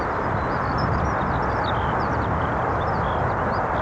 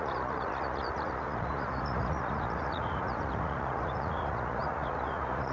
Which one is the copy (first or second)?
second